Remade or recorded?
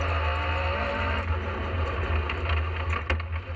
recorded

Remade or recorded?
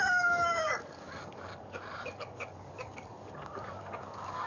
remade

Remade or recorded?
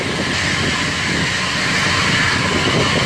recorded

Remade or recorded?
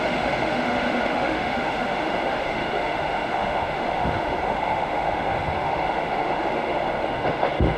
remade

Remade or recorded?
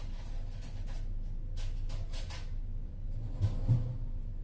recorded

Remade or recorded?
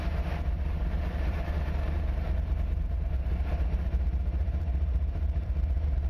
remade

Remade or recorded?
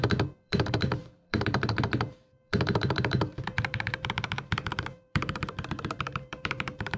remade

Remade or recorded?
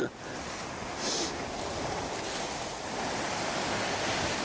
recorded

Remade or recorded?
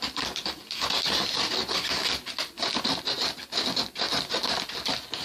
recorded